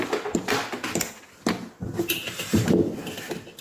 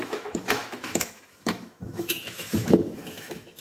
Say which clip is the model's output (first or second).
second